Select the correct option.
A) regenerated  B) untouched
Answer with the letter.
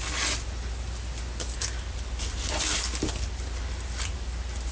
B